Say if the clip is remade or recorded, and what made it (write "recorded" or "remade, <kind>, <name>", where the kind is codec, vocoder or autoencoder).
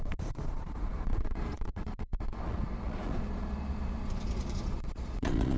remade, vocoder, Vocos